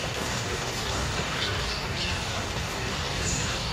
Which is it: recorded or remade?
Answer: remade